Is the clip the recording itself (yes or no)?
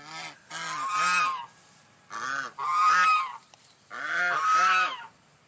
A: yes